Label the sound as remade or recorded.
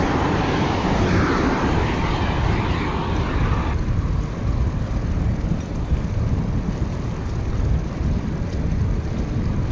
recorded